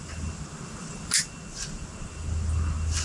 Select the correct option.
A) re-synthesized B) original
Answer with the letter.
A